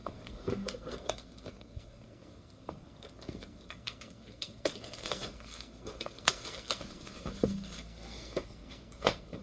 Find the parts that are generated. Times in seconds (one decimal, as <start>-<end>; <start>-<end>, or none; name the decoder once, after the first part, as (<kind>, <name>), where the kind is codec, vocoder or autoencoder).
0.0-9.4 (codec, SNAC)